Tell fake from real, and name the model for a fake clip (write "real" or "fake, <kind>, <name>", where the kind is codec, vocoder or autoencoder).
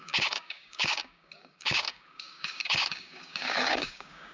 fake, codec, DAC